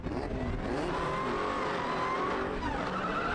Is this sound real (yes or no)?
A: yes